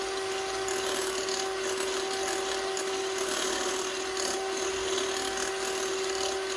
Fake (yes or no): no